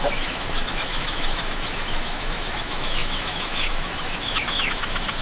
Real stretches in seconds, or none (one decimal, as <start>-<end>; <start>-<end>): none